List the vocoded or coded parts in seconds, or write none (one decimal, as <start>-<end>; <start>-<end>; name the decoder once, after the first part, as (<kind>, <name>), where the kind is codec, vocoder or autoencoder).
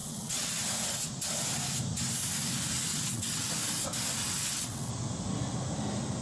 0.0-0.6 (vocoder, WaveNeXt); 2.9-3.5; 4.2-4.9